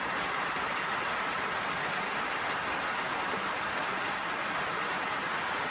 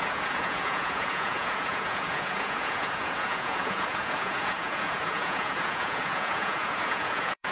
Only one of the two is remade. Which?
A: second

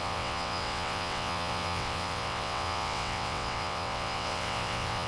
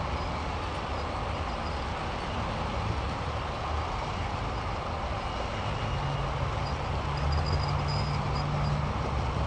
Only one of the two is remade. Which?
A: first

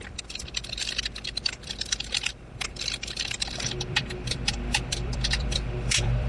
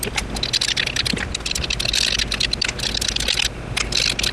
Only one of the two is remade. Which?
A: first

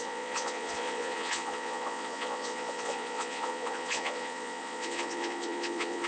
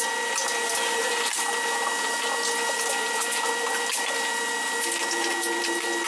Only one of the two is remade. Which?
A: first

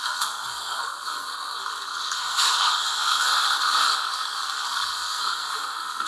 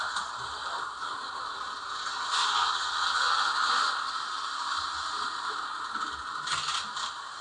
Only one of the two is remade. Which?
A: first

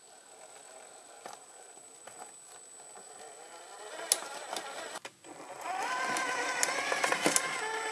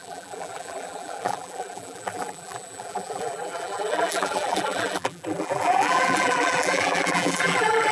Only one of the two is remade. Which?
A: second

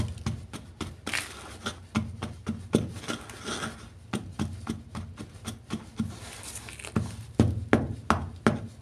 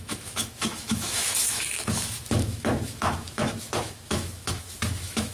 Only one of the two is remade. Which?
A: second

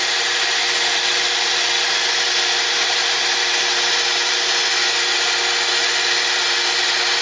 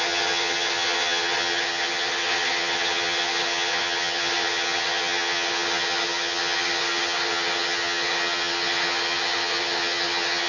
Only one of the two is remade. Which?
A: second